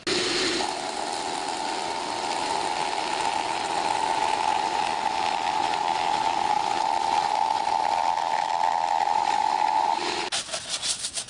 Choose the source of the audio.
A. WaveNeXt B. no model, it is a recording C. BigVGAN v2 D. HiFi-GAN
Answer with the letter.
B